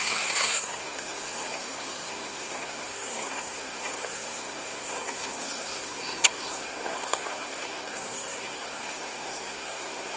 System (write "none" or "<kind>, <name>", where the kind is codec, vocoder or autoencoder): codec, SNAC